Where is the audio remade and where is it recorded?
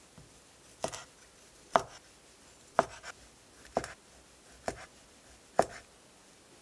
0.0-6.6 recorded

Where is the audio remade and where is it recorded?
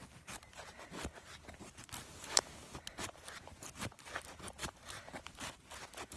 0.0-2.1 recorded; 2.1-4.0 remade; 4.0-4.6 recorded; 4.6-5.6 remade; 5.6-6.2 recorded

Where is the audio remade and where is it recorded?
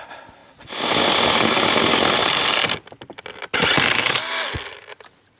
0.0-5.4 recorded